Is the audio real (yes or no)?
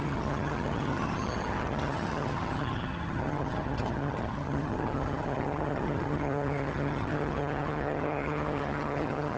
no